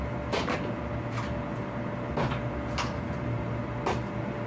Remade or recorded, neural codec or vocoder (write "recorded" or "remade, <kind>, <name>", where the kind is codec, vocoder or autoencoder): recorded